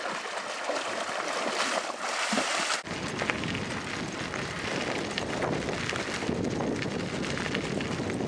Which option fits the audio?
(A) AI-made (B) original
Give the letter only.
B